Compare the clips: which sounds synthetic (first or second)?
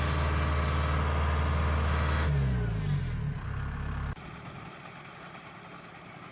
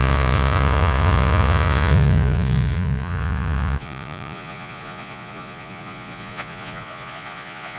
second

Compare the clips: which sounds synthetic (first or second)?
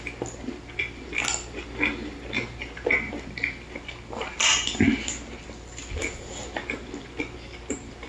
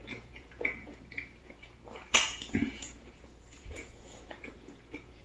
second